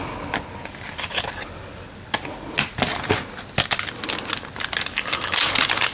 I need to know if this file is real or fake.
real